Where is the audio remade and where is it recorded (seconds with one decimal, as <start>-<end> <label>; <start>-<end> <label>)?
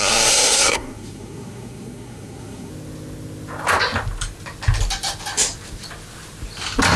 0.0-2.7 remade; 2.7-7.0 recorded